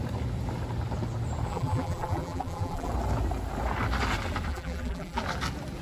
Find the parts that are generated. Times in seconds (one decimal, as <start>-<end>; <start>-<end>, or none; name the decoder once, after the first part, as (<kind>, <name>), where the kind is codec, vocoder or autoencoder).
1.5-2.9 (vocoder, BigVGAN v2); 4.5-5.2